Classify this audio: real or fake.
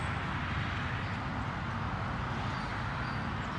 real